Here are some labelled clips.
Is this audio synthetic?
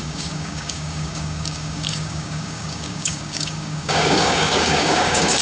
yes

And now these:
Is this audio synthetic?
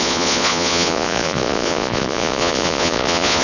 yes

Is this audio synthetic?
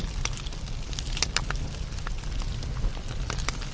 no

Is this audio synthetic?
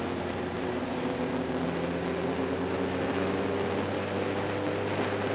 no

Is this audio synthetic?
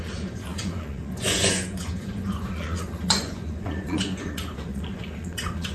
yes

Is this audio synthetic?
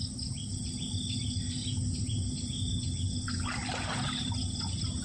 no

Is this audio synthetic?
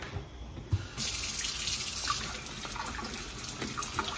no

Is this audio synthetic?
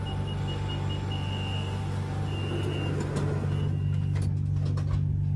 no